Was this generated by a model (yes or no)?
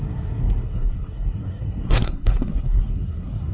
yes